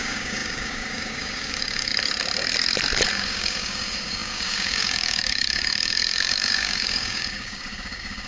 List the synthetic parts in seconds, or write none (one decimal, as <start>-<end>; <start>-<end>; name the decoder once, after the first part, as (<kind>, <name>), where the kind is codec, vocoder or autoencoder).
0.0-1.9 (codec, DAC); 3.1-8.3